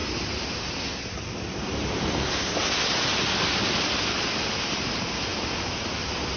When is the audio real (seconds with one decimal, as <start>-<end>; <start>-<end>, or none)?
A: 0.0-6.4